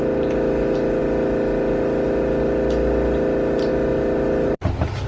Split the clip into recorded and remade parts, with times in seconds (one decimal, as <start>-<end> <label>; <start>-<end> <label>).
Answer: 0.0-5.1 recorded